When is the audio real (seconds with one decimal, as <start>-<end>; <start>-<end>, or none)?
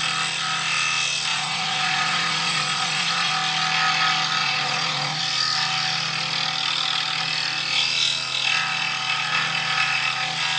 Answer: 0.0-1.3; 3.3-4.4; 5.2-10.6